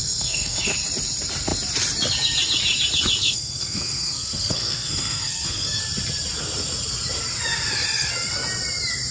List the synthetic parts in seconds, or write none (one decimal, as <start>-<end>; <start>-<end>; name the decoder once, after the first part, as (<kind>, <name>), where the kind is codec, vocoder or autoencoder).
0.0-0.7 (codec, SNAC); 3.2-5.8